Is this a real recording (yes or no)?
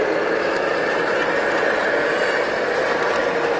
yes